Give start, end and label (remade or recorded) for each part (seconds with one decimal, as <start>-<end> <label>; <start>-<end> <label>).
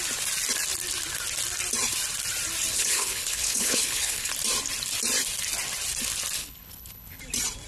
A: 0.0-2.7 recorded; 2.7-4.3 remade; 4.3-6.4 recorded; 6.4-7.2 remade; 7.2-7.7 recorded